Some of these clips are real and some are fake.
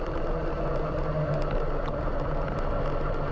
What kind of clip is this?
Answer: real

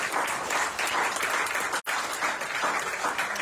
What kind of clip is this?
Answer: real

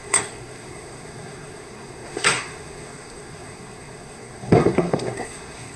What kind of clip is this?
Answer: fake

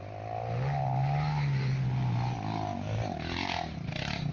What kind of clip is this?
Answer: real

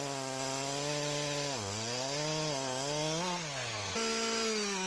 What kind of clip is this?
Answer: real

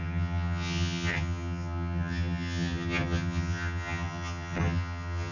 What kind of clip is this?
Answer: fake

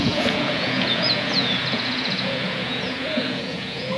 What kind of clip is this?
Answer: fake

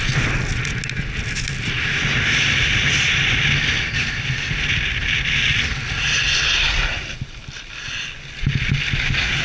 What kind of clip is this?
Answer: real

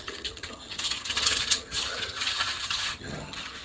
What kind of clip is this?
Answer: fake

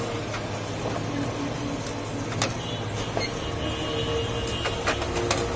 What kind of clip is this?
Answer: real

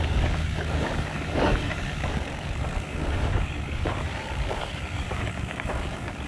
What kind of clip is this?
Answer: fake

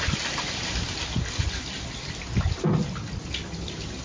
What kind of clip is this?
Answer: real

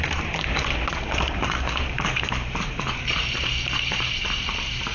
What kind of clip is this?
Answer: fake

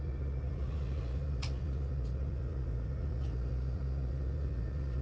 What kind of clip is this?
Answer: fake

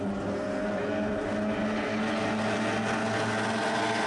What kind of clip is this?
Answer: real